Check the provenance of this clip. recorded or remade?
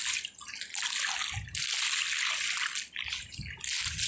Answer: recorded